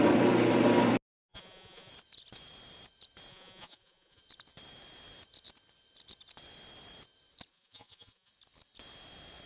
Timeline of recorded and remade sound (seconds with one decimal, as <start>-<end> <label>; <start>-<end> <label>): 0.0-1.3 recorded; 1.3-1.9 remade; 1.9-3.3 recorded; 3.3-4.2 remade; 4.2-7.5 recorded; 7.5-8.3 remade; 8.3-9.5 recorded